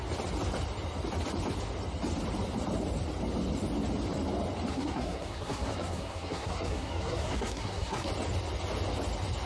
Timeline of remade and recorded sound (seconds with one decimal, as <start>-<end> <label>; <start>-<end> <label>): 0.0-4.7 recorded; 4.7-8.1 remade; 8.1-9.5 recorded

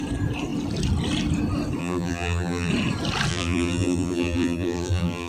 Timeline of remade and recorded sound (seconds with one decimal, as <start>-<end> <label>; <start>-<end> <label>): 0.0-1.8 recorded; 1.8-2.7 remade; 2.7-3.3 recorded; 3.3-5.3 remade

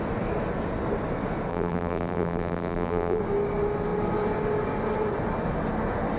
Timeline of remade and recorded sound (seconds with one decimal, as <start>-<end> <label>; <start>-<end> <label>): 0.0-1.5 recorded; 1.5-3.2 remade; 3.2-6.2 recorded

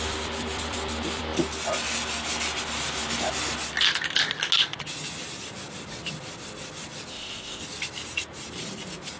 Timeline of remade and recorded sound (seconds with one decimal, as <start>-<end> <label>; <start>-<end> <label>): 0.0-7.1 recorded; 7.1-7.6 remade; 7.6-9.2 recorded